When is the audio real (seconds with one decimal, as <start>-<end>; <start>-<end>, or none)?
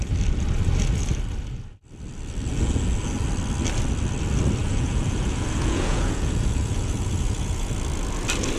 0.0-4.6; 7.7-8.6